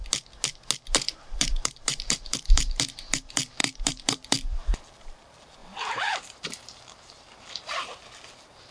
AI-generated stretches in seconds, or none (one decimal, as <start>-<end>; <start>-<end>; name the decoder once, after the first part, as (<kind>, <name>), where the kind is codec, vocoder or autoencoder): 1.3-8.7 (vocoder, BigVGAN v2)